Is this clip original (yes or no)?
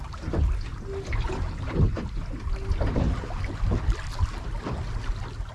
yes